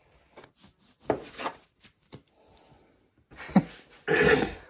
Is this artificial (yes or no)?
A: no